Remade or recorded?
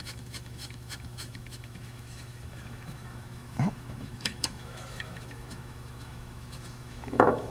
remade